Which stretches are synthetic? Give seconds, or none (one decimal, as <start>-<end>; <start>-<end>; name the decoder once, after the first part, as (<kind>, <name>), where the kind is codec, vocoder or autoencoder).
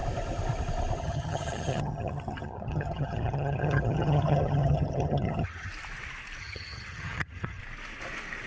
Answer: 1.0-5.7 (vocoder, HiFi-GAN); 6.4-7.6